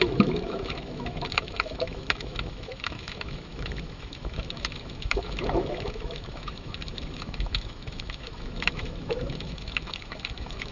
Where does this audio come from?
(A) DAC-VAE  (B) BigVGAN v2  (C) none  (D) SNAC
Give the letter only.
A